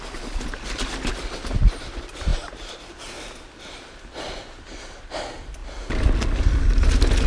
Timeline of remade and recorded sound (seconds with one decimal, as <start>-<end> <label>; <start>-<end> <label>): 0.0-7.3 recorded